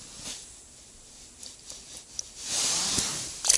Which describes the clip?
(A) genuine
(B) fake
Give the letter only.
A